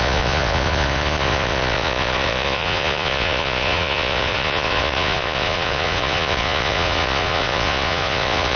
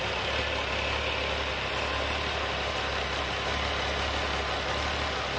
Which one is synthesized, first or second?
first